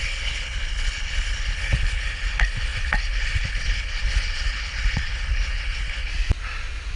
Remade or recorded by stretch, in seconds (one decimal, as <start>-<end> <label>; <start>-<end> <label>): 0.0-6.1 remade; 6.1-7.0 recorded